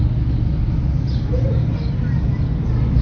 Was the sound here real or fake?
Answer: real